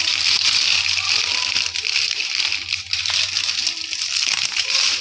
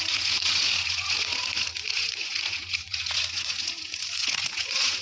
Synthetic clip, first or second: second